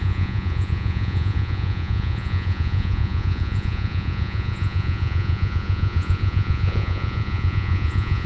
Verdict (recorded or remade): remade